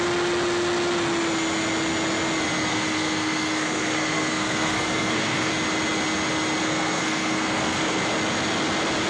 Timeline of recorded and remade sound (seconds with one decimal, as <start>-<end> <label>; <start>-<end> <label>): 0.0-2.7 recorded; 2.7-5.5 remade; 5.5-6.6 recorded; 6.6-8.0 remade; 8.0-9.1 recorded